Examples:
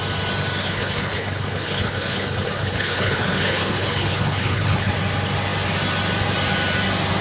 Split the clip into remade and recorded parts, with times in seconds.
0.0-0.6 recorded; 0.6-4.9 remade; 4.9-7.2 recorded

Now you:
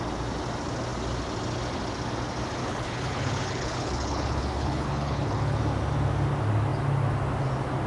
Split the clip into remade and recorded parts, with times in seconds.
0.0-2.6 recorded; 2.6-5.6 remade; 5.6-7.9 recorded

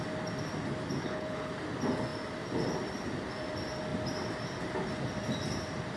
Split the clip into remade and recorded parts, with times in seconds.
0.0-1.0 recorded; 1.0-1.5 remade; 1.5-6.0 recorded

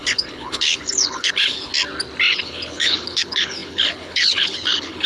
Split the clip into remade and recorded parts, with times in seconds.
0.0-1.7 remade; 1.7-2.3 recorded; 2.3-5.1 remade

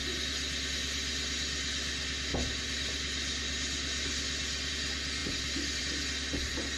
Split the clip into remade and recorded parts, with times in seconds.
0.0-6.8 recorded

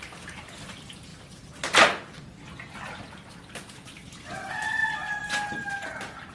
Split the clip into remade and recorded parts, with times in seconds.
0.0-6.3 recorded